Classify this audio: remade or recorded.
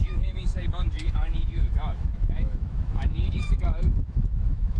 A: remade